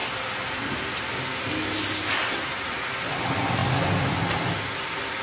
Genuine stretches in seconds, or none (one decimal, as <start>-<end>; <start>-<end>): 0.0-5.2